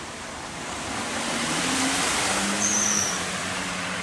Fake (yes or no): yes